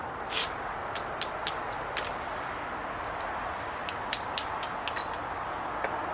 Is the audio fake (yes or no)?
no